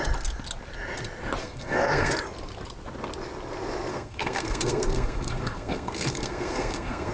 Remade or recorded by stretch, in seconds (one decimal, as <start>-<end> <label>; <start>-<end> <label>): 0.0-1.4 recorded; 1.4-2.1 remade; 2.1-3.9 recorded; 3.9-7.1 remade